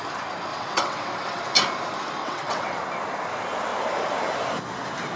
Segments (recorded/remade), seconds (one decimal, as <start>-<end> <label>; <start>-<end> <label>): 0.0-0.5 recorded; 0.5-1.4 remade; 1.4-2.2 recorded; 2.2-2.8 remade; 2.8-5.2 recorded